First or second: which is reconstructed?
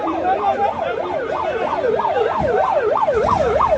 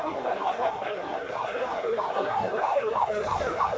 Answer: second